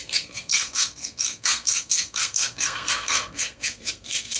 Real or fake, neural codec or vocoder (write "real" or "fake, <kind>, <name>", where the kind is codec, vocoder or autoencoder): fake, codec, SNAC